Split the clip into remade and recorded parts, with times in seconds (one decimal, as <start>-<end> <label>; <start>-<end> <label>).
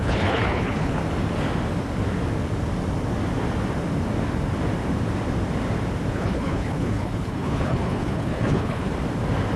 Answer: 0.0-1.0 remade; 1.0-6.1 recorded; 6.1-8.9 remade; 8.9-9.6 recorded